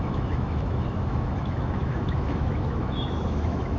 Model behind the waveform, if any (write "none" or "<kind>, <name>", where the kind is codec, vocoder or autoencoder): autoencoder, DAC-VAE